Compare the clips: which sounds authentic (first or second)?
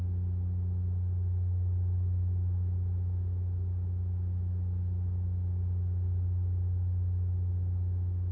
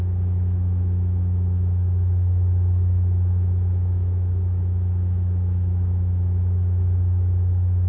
first